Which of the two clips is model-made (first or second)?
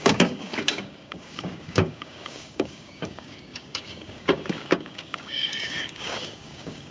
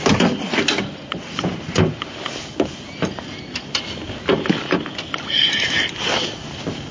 first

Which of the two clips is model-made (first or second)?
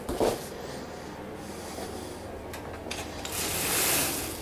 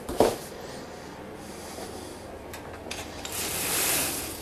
second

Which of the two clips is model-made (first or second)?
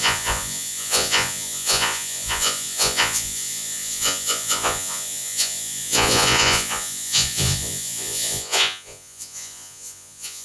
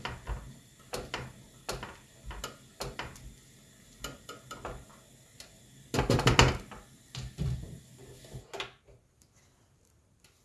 first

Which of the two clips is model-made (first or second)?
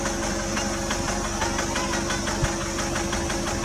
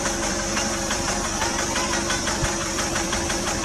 second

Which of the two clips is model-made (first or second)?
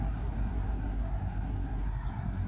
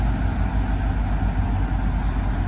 first